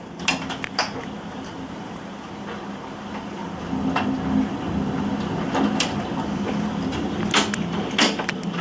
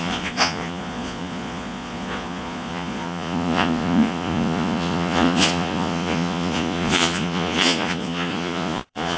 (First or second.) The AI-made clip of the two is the second